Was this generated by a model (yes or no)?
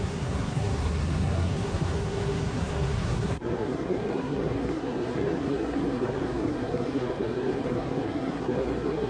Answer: yes